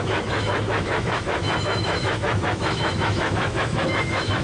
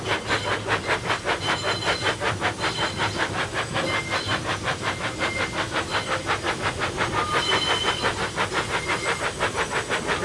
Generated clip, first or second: first